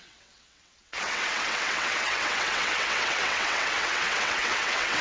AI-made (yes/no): yes